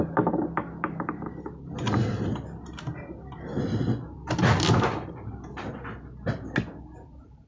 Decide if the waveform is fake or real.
real